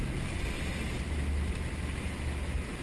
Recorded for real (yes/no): yes